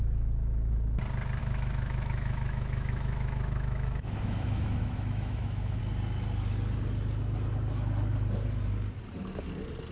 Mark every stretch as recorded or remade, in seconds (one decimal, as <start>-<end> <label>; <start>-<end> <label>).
0.0-1.4 recorded; 1.4-5.8 remade; 5.8-9.9 recorded